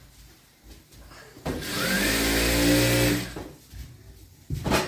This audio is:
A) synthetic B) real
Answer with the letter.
B